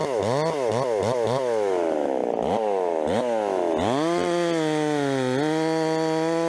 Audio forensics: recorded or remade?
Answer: recorded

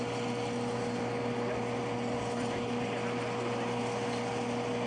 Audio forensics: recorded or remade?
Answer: recorded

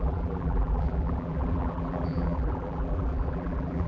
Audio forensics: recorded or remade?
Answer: remade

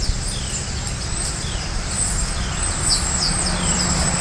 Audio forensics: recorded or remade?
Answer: recorded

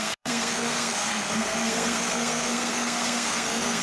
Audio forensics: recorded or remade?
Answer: remade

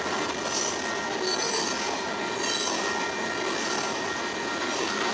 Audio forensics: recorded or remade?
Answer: recorded